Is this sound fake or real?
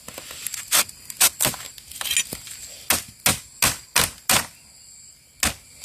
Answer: real